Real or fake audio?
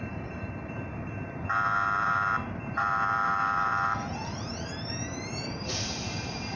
fake